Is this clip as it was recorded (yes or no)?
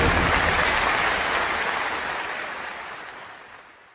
yes